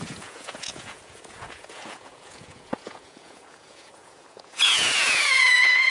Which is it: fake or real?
fake